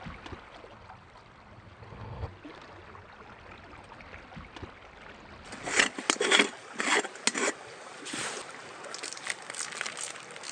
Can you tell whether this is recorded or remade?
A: recorded